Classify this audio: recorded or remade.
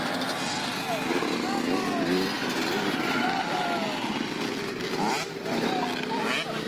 recorded